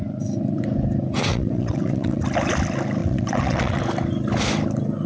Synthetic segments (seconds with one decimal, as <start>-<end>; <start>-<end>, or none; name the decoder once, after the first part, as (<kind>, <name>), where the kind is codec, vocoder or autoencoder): 1.3-2.2 (vocoder, WaveNeXt); 3.0-3.8